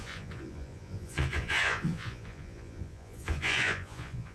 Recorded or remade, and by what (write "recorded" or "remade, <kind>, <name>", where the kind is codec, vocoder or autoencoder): remade, vocoder, Vocos